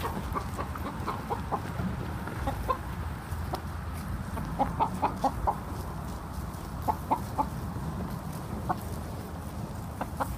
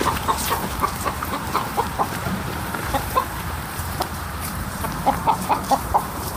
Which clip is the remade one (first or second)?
second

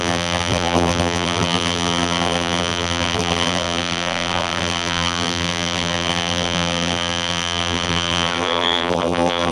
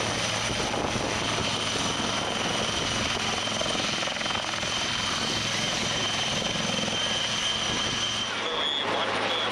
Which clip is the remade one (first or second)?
first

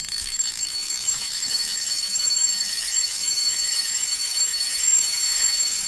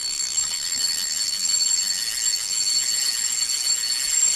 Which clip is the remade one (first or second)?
first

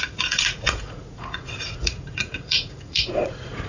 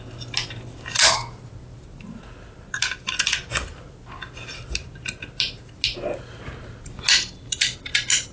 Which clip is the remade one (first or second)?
first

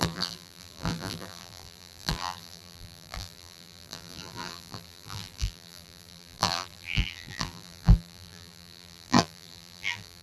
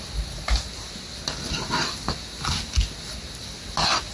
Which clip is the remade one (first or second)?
first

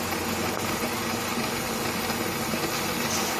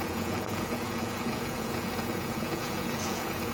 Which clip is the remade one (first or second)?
second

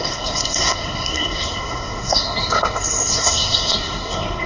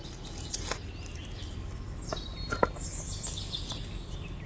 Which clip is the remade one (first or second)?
first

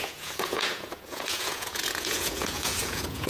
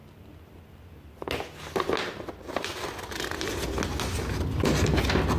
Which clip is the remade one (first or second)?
first